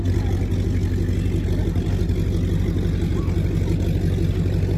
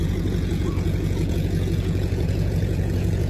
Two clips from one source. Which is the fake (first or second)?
second